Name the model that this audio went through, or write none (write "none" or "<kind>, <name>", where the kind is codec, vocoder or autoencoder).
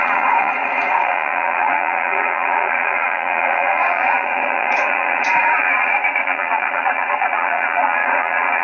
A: vocoder, Vocos